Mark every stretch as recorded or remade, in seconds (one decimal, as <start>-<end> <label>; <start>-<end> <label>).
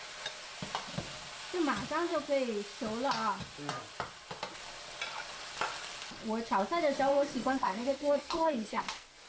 0.0-7.1 recorded; 7.1-9.3 remade